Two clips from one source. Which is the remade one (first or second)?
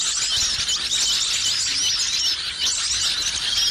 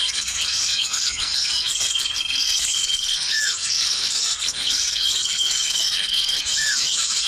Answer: second